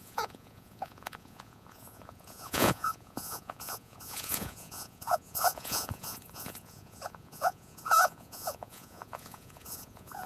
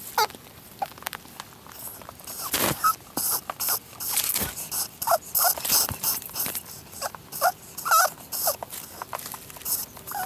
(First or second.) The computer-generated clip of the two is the first